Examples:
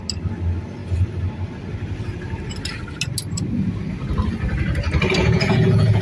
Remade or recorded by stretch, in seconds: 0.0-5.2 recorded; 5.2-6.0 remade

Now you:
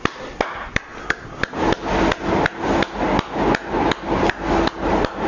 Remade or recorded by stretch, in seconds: 0.0-5.3 recorded